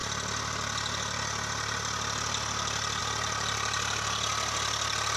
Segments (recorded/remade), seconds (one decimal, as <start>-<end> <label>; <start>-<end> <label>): 0.0-5.2 recorded